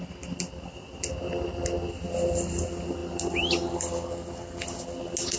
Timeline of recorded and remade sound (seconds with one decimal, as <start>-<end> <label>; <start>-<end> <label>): 0.0-5.4 recorded